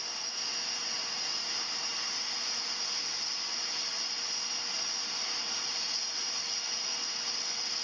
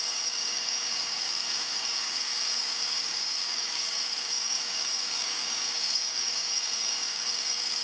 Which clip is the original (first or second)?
first